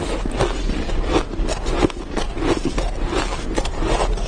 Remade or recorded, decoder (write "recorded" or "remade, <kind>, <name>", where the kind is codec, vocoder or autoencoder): recorded